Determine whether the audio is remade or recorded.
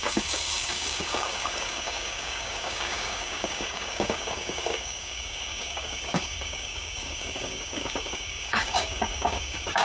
remade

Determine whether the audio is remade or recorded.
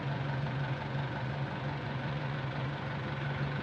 remade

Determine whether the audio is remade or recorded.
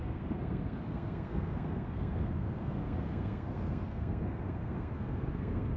remade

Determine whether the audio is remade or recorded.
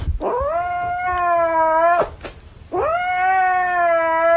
recorded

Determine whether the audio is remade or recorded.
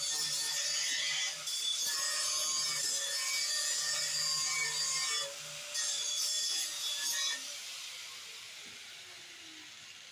recorded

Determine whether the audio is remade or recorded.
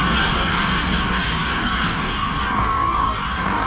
remade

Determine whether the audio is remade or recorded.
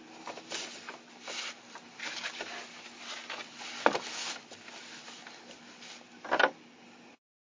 recorded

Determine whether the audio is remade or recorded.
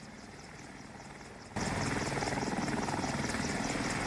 recorded